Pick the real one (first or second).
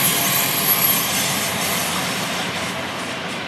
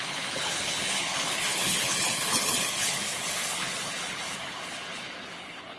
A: first